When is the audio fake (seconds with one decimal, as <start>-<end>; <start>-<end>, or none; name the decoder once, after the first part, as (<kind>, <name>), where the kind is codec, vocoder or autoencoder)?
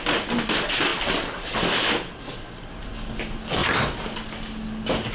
none